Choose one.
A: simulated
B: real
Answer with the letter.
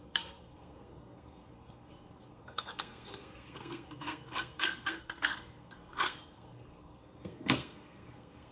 A